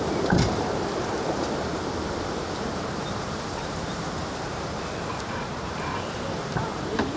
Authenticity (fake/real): fake